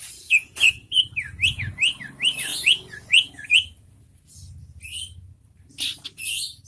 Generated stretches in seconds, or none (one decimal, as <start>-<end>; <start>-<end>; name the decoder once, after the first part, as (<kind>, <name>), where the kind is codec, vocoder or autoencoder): 0.0-1.0 (vocoder, Vocos); 2.5-4.3